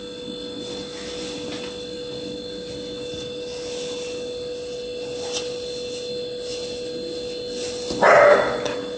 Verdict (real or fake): real